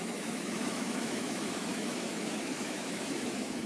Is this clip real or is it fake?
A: fake